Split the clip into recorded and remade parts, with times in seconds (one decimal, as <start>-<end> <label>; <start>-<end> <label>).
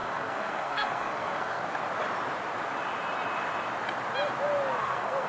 0.0-1.6 remade; 1.6-4.8 recorded; 4.8-5.3 remade